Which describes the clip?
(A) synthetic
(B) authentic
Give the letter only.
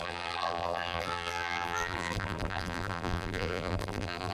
A